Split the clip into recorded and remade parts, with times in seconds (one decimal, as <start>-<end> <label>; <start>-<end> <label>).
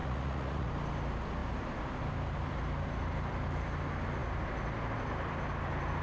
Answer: 0.0-0.7 remade; 0.7-6.0 recorded